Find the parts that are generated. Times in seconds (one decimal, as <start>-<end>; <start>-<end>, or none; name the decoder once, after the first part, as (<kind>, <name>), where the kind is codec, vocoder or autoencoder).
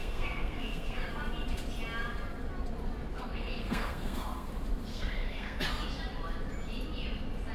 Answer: 0.0-1.1 (codec, SNAC); 3.1-4.5; 4.9-5.6